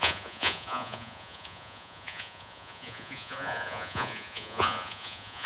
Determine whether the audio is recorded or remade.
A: remade